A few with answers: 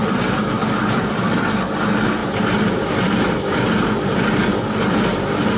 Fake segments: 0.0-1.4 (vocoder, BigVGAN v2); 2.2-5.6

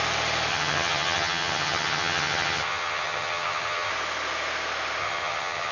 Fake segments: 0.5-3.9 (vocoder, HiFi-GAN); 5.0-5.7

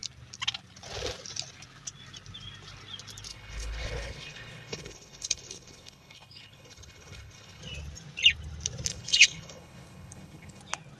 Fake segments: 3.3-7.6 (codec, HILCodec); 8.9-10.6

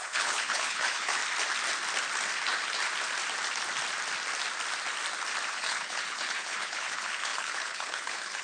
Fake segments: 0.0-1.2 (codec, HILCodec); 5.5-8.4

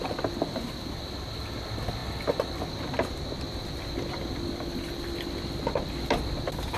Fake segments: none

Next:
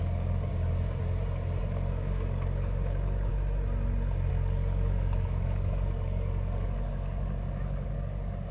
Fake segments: 0.0-0.5 (codec, DAC); 1.6-3.3; 4.3-8.5